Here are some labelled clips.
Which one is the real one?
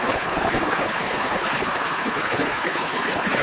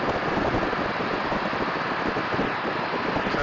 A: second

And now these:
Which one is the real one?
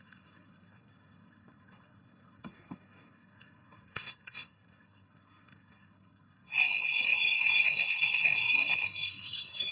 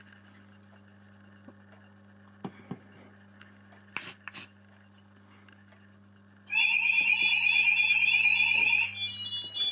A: second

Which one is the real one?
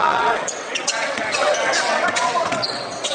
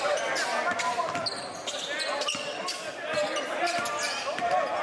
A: second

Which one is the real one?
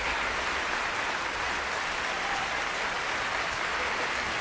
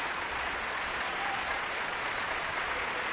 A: first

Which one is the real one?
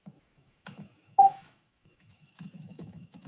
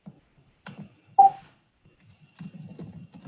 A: second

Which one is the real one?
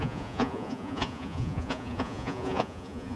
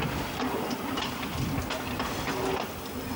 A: second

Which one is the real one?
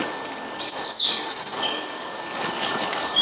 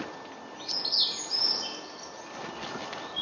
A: second